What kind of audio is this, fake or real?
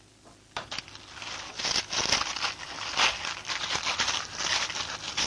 real